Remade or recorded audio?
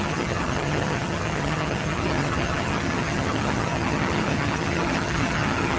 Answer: remade